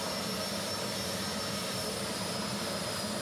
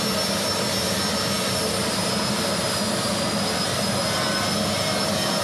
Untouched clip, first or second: second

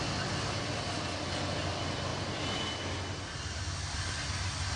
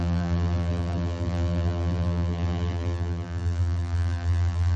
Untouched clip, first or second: first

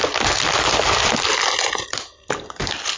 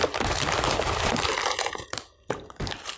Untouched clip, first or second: first